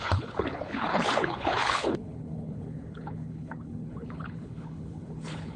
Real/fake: fake